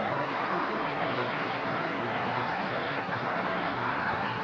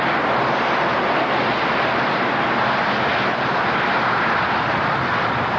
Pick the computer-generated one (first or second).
first